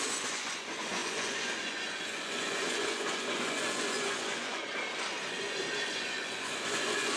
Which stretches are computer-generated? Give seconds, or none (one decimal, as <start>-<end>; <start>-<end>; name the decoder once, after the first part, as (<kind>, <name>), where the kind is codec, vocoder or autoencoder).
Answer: 0.0-4.7 (vocoder, Vocos); 5.3-7.2